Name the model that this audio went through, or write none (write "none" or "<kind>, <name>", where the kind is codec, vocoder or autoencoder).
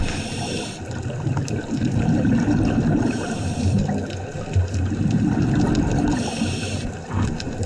none